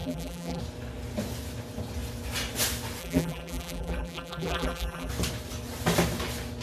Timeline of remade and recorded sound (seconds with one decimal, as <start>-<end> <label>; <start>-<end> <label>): 0.0-0.6 remade; 0.6-3.0 recorded; 3.0-5.1 remade; 5.1-6.6 recorded